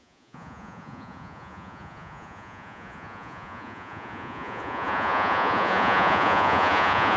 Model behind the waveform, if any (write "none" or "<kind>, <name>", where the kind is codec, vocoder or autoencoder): vocoder, Vocos